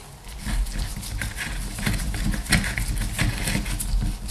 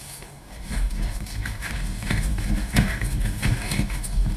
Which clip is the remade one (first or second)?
second